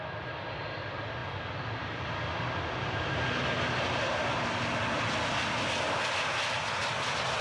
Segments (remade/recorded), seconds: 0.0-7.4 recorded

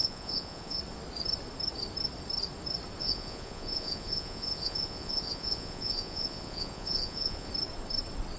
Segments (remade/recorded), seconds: 0.0-0.8 remade; 0.8-3.0 recorded; 3.0-7.5 remade; 7.5-8.4 recorded